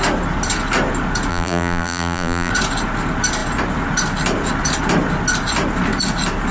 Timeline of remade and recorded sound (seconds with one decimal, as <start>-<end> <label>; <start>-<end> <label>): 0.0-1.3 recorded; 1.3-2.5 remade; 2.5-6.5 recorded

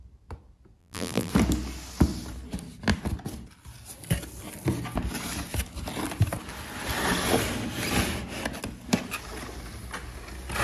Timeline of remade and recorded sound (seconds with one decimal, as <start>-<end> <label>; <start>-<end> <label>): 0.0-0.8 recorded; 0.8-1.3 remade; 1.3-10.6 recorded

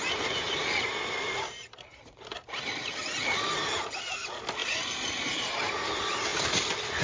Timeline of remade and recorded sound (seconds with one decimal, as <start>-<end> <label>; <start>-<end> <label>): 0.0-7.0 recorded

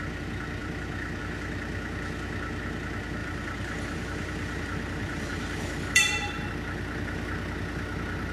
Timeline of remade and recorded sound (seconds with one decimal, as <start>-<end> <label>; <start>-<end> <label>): 0.0-3.2 recorded; 3.2-6.5 remade; 6.5-8.3 recorded

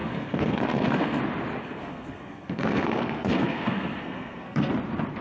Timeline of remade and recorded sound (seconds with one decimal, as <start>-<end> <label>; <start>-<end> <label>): 0.0-1.2 remade; 1.2-1.6 recorded; 1.6-4.7 remade; 4.7-5.2 recorded

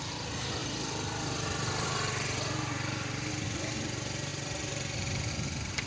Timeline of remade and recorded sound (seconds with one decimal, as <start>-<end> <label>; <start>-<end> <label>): 0.0-5.9 recorded

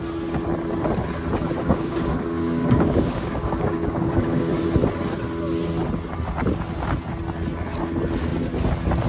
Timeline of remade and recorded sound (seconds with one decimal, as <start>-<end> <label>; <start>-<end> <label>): 0.0-1.6 recorded; 1.6-4.6 remade; 4.6-9.1 recorded